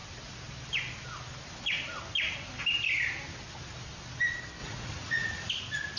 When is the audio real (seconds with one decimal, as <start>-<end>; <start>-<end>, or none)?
0.0-4.6; 5.5-6.0